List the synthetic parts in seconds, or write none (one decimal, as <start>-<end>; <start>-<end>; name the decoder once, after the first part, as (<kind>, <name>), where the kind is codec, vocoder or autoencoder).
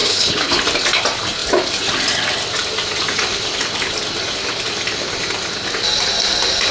0.0-0.6 (codec, HILCodec)